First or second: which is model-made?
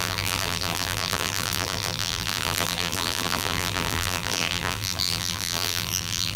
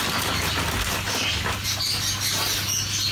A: first